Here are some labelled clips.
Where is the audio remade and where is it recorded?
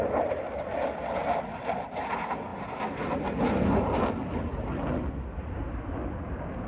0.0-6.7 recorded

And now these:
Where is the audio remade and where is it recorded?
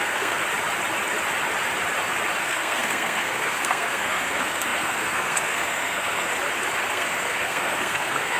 0.0-0.4 remade; 0.4-2.4 recorded; 2.4-6.3 remade; 6.3-6.9 recorded; 6.9-8.4 remade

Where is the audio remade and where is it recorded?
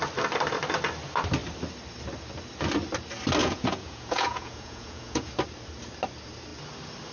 0.0-3.4 recorded; 3.4-5.3 remade; 5.3-7.1 recorded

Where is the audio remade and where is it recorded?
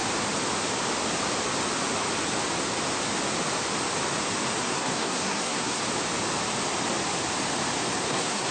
0.0-4.6 recorded; 4.6-5.8 remade; 5.8-8.0 recorded; 8.0-8.5 remade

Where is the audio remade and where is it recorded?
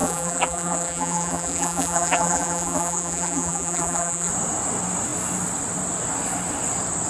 0.0-4.3 remade; 4.3-7.1 recorded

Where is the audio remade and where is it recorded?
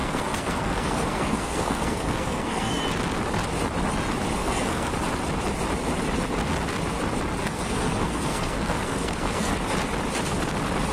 0.0-2.8 remade; 2.8-4.4 recorded; 4.4-4.9 remade; 4.9-7.4 recorded; 7.4-9.5 remade; 9.5-10.9 recorded